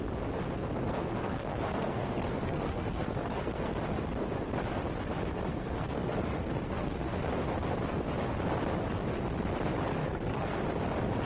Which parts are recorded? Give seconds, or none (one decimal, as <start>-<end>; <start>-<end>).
0.0-0.8; 3.8-5.5; 7.2-10.0; 10.6-11.3